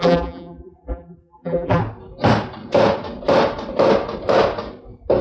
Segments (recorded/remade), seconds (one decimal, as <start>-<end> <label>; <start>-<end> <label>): 0.0-1.8 remade; 1.8-5.2 recorded